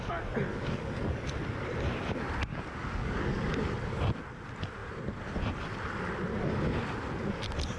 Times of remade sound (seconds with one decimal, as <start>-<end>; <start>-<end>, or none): 0.5-1.3; 2.5-3.5